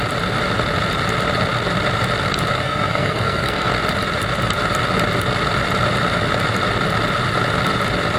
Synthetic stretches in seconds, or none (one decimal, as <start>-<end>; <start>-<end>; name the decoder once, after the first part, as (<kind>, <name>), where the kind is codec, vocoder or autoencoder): 2.5-3.7 (codec, SNAC)